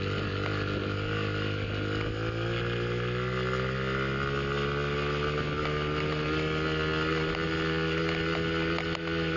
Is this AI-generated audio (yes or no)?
no